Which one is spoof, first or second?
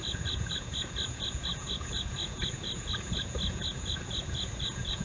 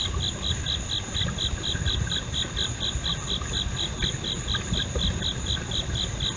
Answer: first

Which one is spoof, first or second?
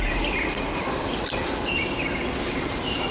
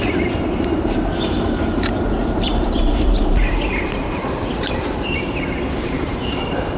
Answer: second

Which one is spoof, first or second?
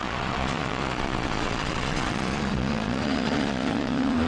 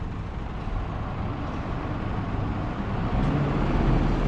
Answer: first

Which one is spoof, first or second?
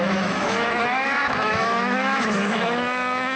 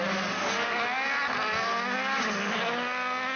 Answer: first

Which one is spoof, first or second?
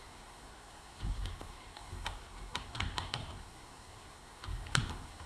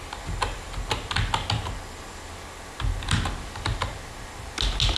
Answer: first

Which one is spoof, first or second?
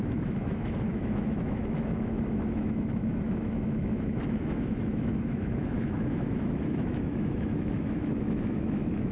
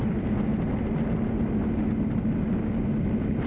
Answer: first